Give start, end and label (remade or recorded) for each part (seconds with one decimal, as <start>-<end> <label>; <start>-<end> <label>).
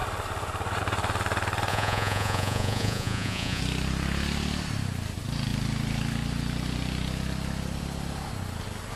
0.0-1.7 recorded; 1.7-3.6 remade; 3.6-9.0 recorded